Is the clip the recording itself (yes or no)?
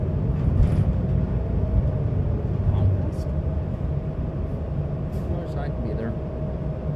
yes